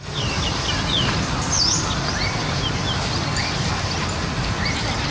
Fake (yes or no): no